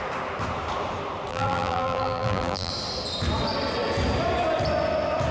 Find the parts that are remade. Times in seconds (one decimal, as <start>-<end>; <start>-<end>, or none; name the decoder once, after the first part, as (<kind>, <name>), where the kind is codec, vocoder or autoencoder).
1.3-2.7 (vocoder, BigVGAN v2)